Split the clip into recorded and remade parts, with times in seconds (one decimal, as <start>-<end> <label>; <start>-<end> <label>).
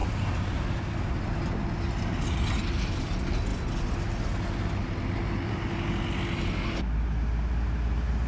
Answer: 0.0-8.3 recorded